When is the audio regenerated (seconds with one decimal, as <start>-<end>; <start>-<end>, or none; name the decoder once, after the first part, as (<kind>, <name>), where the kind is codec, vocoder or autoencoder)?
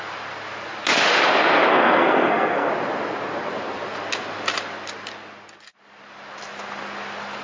1.7-2.7 (codec, SNAC)